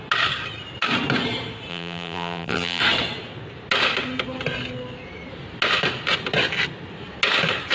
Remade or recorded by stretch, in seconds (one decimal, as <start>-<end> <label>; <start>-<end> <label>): 0.0-1.7 recorded; 1.7-2.8 remade; 2.8-7.7 recorded